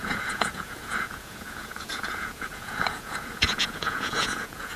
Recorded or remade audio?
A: remade